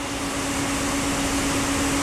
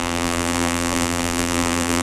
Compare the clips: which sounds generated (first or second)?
second